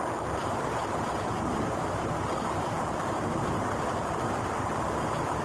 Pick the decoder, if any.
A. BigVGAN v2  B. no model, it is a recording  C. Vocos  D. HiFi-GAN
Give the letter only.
B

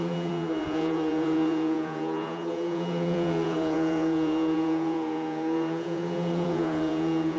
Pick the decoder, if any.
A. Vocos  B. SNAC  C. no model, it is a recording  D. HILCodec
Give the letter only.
A